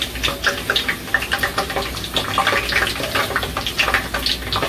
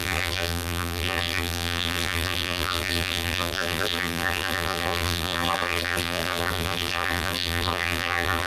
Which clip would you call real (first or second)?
first